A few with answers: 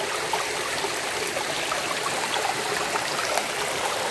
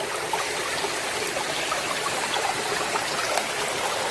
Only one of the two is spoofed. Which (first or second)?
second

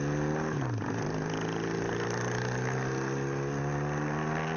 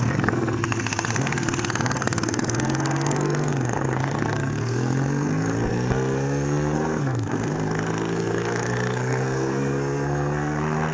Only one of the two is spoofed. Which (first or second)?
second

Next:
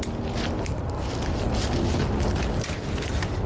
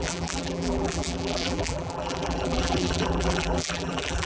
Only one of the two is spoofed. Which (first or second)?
second